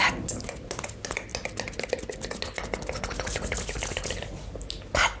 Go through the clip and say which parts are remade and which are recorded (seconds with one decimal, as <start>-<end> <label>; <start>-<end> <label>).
0.0-5.2 recorded